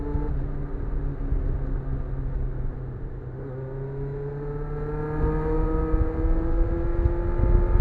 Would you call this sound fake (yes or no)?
no